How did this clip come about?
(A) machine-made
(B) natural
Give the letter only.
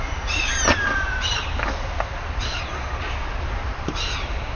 B